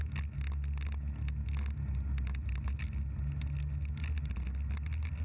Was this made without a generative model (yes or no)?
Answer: yes